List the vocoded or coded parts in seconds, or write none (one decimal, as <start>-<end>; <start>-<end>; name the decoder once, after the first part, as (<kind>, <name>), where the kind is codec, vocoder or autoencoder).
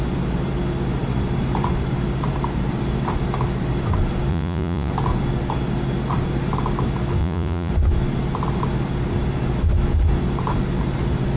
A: 4.3-4.9 (vocoder, Vocos); 7.2-7.7